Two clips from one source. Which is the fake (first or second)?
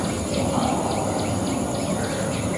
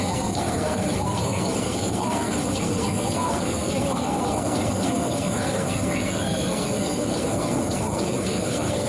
second